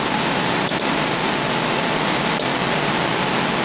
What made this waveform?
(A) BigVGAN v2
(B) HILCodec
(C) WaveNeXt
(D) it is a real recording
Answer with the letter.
D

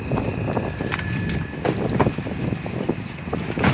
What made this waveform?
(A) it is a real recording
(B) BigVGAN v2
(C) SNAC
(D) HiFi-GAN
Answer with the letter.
A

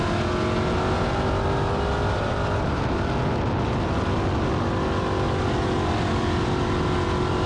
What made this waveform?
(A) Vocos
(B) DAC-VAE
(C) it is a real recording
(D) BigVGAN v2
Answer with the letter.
C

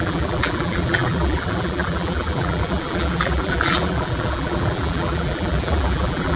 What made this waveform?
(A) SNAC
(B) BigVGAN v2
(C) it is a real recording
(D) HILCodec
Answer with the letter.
B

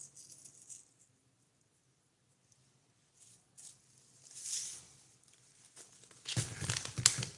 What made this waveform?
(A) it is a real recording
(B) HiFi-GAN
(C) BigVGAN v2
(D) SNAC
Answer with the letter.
A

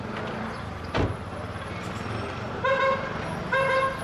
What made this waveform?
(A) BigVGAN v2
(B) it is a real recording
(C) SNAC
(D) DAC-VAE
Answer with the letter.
B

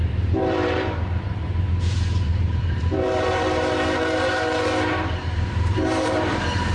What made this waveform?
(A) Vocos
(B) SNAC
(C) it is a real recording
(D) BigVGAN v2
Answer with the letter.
D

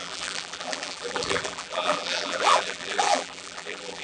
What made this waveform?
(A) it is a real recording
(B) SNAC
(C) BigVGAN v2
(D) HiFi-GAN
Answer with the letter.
C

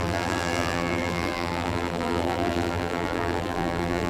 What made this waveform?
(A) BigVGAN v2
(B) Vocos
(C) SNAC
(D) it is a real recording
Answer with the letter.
A